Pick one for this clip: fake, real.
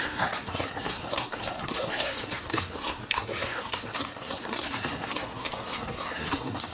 fake